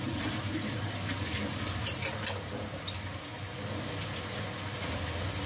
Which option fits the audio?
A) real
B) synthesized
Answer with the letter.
A